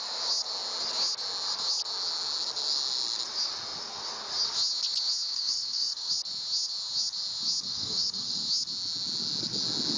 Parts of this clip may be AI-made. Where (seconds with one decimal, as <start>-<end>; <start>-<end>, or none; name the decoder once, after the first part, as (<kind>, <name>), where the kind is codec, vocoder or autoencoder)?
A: 5.3-6.1 (autoencoder, DAC-VAE); 7.7-8.4